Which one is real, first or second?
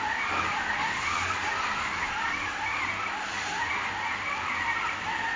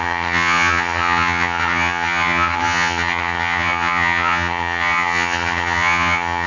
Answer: first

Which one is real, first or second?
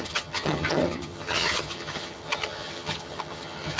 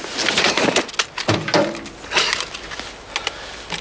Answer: second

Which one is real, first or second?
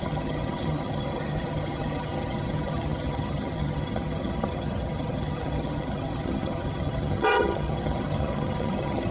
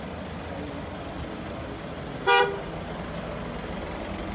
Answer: second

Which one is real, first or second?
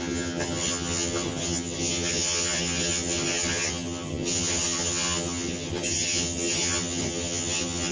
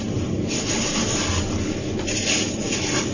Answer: second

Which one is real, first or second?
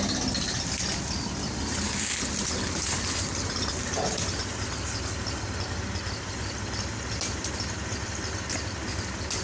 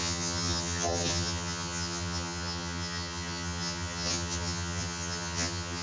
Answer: first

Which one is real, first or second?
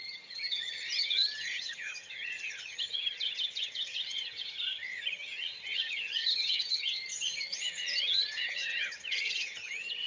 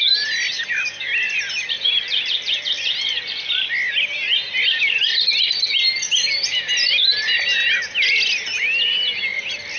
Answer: second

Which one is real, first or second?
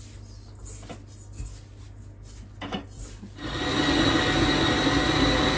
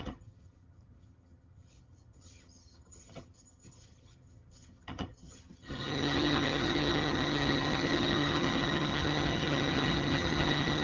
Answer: first